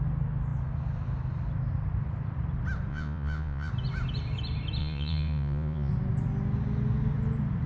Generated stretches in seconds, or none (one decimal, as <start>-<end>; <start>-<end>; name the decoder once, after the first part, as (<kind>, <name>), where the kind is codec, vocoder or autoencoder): 2.9-3.7 (vocoder, Vocos); 4.8-5.9